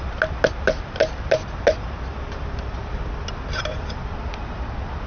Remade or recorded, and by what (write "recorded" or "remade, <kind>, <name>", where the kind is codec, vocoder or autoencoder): recorded